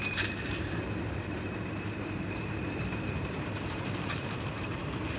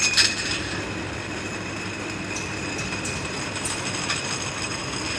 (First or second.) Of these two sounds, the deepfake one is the first